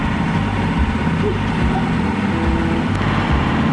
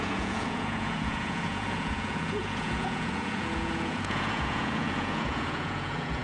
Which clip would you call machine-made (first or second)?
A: second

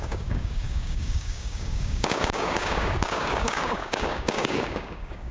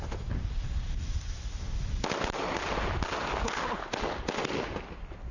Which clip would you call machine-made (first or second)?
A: first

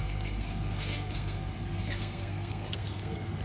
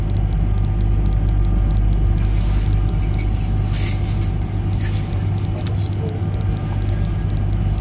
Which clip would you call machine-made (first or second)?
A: first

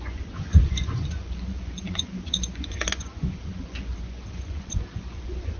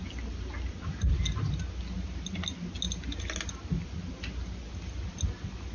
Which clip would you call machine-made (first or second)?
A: first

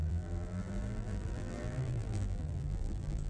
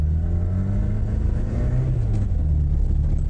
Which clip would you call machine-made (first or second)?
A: first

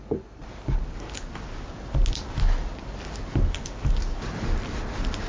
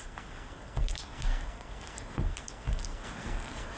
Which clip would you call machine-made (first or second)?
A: second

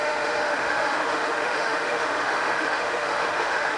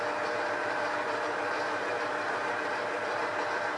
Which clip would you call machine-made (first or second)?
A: first